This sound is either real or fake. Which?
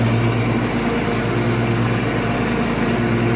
real